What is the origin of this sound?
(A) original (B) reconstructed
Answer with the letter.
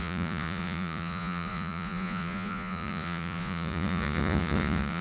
B